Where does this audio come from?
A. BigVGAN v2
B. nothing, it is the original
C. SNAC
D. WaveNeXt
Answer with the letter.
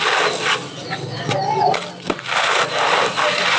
B